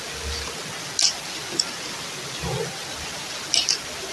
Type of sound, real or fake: real